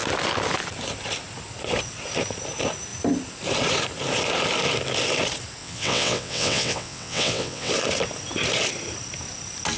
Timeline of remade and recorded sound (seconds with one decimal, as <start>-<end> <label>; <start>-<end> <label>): 0.0-5.6 recorded; 5.6-7.7 remade; 7.7-9.8 recorded